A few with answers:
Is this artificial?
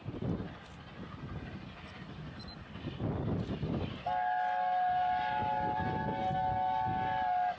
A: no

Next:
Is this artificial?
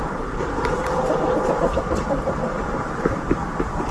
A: no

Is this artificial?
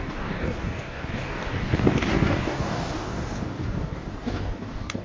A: yes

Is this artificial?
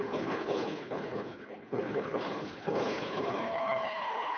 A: yes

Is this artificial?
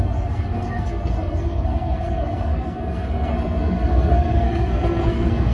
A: yes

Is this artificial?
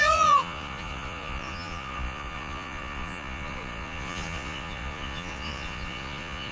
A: yes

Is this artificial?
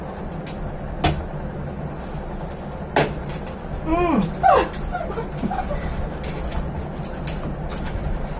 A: no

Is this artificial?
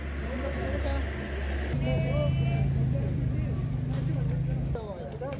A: no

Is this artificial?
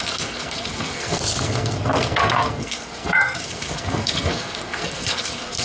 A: yes